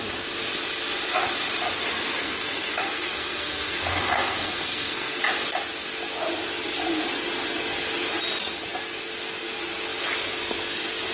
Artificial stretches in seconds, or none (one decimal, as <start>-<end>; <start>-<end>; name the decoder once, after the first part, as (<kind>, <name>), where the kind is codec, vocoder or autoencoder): 2.2-5.2 (codec, SNAC)